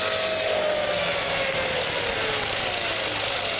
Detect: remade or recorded recorded